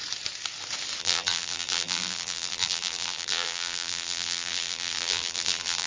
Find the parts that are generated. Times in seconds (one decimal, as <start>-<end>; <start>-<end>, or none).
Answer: 1.0-5.9